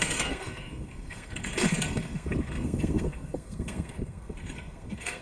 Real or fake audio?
fake